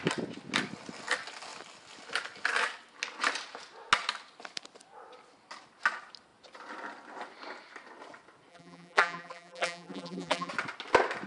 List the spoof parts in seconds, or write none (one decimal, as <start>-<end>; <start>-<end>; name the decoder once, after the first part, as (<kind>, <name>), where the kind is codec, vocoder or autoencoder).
8.5-10.5 (vocoder, BigVGAN v2)